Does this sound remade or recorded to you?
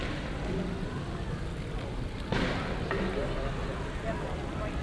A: recorded